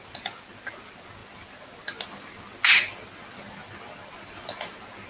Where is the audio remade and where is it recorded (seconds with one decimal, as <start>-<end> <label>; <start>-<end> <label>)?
0.0-5.1 recorded